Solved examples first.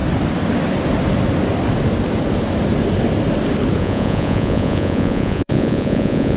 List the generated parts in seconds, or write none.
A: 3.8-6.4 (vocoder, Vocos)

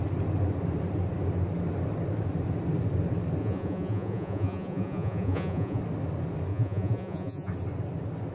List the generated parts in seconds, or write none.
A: 3.4-5.8 (vocoder, Vocos); 6.5-7.5

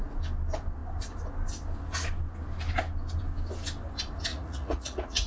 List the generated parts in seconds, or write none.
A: 4.3-5.3 (vocoder, Vocos)

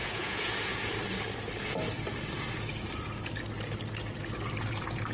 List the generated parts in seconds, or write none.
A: 0.0-0.9 (vocoder, Vocos)

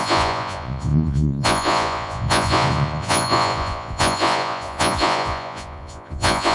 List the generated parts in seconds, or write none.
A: 0.0-6.5 (vocoder, Vocos)

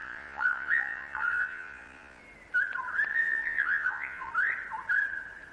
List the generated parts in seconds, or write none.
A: 0.0-2.2 (vocoder, Vocos); 3.1-4.3